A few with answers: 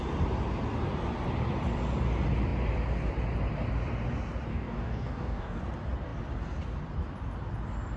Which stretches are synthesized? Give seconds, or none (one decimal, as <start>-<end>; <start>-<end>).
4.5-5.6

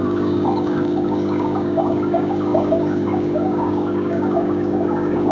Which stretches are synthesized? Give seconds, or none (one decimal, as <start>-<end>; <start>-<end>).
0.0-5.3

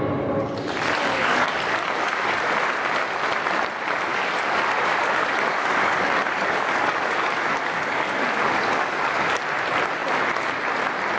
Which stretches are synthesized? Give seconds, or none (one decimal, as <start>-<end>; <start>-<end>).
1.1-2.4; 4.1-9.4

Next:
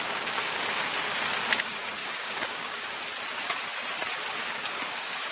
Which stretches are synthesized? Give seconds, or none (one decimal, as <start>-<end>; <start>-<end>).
2.0-3.0; 4.4-5.3

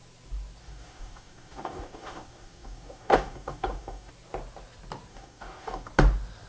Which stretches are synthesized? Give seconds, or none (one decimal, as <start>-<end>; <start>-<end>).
0.6-4.1; 5.1-5.9